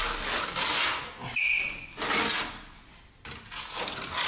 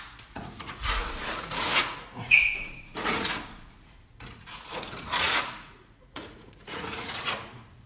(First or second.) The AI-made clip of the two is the second